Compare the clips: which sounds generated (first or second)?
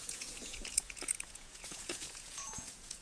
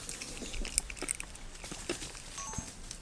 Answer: first